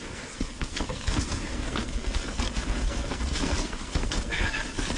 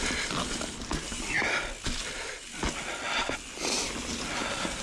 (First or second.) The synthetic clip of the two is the first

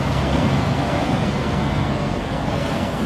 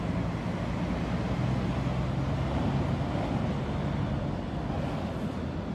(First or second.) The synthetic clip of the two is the first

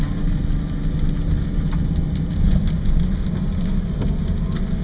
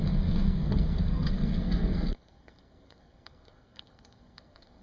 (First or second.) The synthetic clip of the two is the second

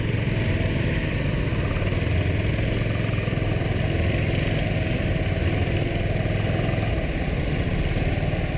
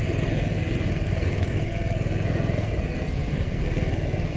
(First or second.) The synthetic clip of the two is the second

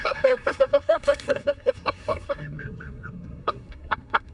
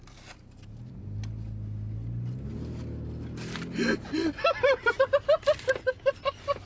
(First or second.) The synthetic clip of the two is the first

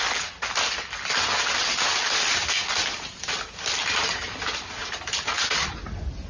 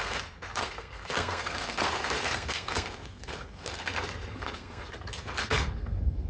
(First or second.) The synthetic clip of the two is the second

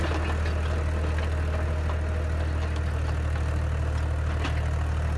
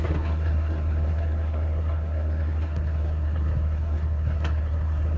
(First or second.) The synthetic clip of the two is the second